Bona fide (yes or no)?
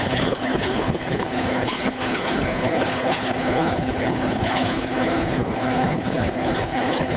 no